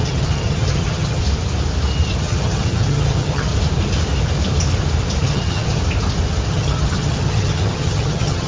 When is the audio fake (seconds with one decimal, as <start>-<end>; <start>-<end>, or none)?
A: 0.0-1.2; 2.2-3.5; 5.2-5.8; 6.5-8.5